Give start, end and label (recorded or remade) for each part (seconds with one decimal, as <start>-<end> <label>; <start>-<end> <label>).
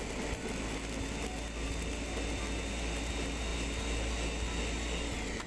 0.0-5.5 recorded